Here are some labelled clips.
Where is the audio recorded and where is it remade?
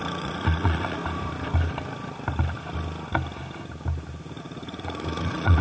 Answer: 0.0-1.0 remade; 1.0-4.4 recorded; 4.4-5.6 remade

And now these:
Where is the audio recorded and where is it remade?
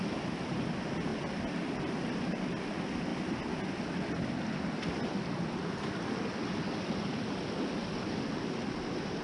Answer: 0.0-9.2 recorded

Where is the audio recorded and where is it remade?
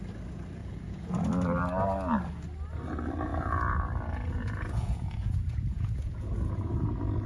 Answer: 0.0-0.6 recorded; 0.6-1.2 remade; 1.2-3.3 recorded; 3.3-7.3 remade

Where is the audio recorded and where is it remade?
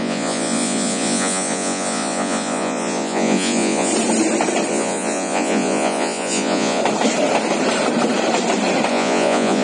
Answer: 0.0-3.9 remade; 3.9-4.7 recorded; 4.7-6.8 remade; 6.8-8.9 recorded; 8.9-9.6 remade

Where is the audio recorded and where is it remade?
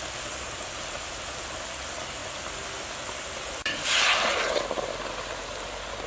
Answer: 0.0-6.1 recorded